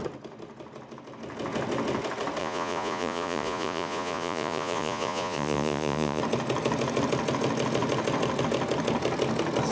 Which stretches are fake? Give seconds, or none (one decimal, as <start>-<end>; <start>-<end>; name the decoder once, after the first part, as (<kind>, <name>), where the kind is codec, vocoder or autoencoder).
2.4-6.2 (vocoder, Vocos)